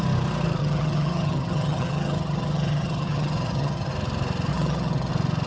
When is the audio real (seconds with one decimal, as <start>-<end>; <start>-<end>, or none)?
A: 0.0-0.6; 3.9-4.5; 5.1-5.5